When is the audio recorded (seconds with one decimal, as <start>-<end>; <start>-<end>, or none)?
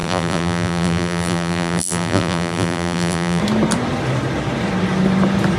3.4-5.6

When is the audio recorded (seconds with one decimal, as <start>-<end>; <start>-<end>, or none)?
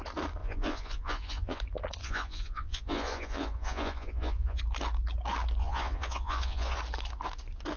0.0-0.4; 1.6-2.0; 4.6-5.6; 6.8-7.8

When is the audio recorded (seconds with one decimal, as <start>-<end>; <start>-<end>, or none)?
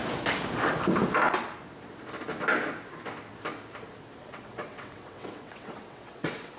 0.0-4.2